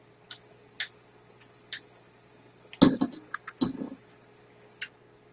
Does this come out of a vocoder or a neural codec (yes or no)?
no